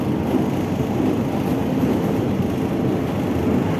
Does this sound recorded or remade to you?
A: recorded